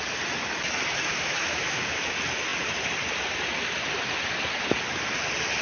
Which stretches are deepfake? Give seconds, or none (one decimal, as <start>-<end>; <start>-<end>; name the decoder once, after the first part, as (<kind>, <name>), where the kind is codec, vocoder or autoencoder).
1.1-2.1 (autoencoder, DAC-VAE)